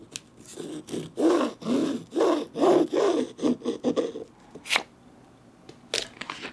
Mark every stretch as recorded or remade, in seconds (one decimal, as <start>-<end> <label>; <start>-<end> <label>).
0.0-6.5 recorded